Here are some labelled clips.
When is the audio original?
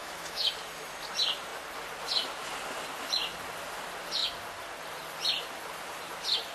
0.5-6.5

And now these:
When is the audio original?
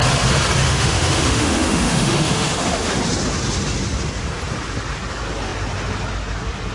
0.0-0.6; 3.0-6.7